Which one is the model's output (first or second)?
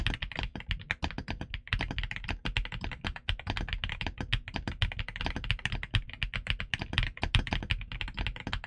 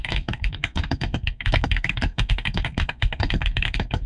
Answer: second